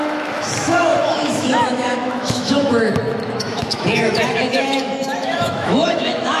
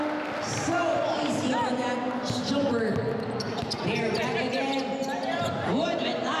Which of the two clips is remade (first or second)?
first